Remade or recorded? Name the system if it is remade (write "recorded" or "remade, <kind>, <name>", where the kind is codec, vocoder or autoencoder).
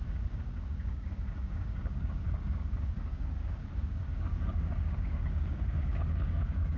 remade, codec, DAC